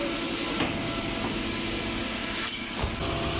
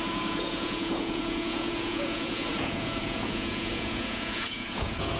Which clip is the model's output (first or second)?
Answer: second